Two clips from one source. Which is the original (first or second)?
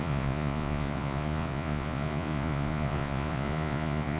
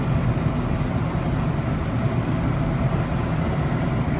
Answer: second